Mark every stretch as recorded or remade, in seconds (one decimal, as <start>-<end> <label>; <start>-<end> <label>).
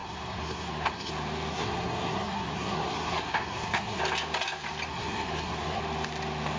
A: 0.0-1.1 remade; 1.1-1.5 recorded; 1.5-4.0 remade; 4.0-4.9 recorded; 4.9-5.8 remade; 5.8-6.6 recorded